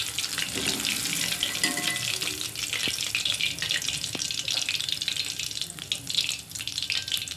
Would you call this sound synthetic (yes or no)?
no